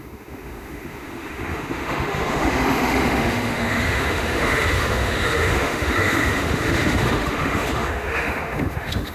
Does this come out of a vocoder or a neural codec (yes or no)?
yes